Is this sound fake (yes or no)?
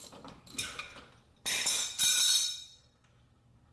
no